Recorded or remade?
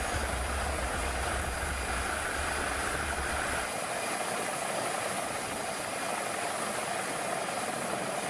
recorded